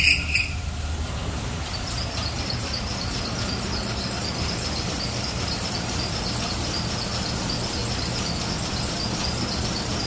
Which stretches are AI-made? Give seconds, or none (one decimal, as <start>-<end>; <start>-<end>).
2.2-6.1; 7.8-8.4